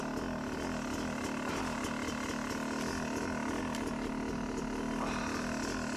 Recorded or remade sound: recorded